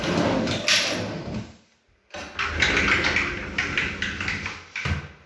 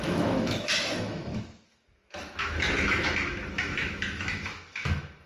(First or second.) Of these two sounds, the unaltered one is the first